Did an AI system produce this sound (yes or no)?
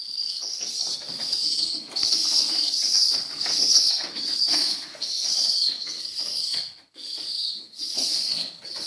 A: yes